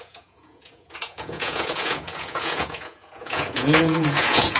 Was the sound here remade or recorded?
remade